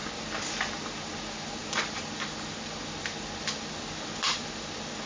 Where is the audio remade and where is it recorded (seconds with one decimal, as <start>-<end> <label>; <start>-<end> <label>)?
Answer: 0.0-5.1 recorded